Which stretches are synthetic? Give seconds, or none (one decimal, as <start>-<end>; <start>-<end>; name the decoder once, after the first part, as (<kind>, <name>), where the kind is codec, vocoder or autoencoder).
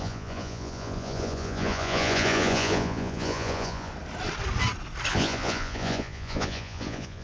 0.0-3.9 (vocoder, Vocos); 5.1-7.2